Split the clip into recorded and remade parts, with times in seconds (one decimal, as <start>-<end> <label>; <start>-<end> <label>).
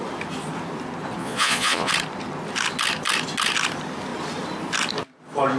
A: 0.0-1.2 recorded; 1.2-1.9 remade; 1.9-5.6 recorded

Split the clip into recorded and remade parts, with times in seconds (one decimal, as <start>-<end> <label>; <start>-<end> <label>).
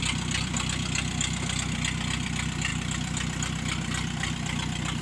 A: 0.0-5.0 recorded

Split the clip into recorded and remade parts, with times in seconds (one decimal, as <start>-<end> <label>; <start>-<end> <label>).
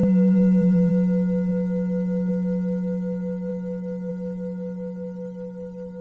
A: 0.0-0.9 remade; 0.9-6.0 recorded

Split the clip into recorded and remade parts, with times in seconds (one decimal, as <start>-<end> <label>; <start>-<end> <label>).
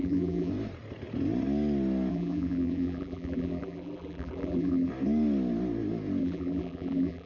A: 0.0-0.5 remade; 0.5-2.1 recorded; 2.1-4.9 remade; 4.9-6.2 recorded; 6.2-7.3 remade